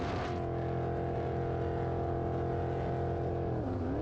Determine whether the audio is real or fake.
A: real